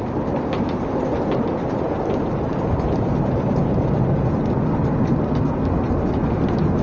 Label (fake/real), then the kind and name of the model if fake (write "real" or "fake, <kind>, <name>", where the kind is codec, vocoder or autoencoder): real